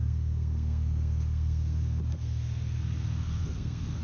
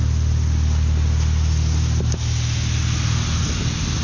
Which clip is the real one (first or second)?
second